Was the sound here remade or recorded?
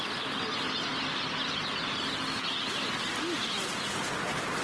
recorded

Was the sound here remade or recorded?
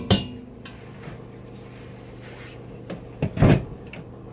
recorded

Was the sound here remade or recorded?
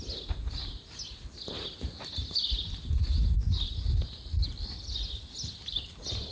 recorded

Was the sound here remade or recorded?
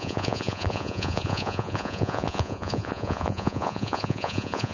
remade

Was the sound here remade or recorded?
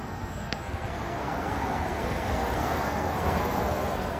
remade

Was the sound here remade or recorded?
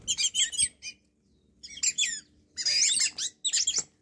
recorded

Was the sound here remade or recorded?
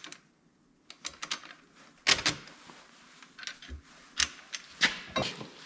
recorded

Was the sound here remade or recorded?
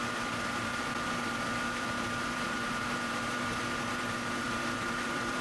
remade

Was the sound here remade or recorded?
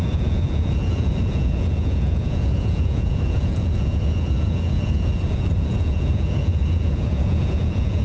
remade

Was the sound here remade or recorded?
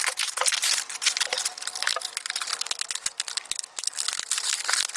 recorded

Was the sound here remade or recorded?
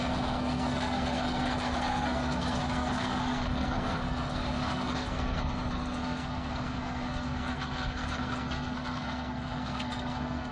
remade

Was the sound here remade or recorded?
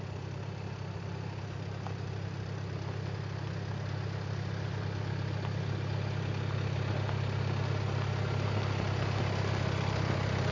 recorded